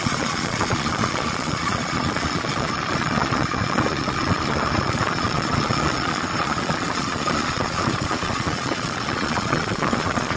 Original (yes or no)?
no